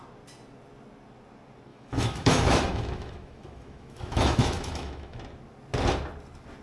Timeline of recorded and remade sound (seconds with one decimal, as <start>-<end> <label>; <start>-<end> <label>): 0.0-1.7 recorded; 1.7-5.2 remade; 5.2-6.6 recorded